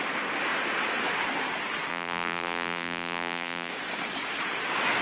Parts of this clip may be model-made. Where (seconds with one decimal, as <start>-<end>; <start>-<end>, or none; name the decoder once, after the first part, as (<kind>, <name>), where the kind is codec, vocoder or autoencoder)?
1.9-3.7 (vocoder, BigVGAN v2)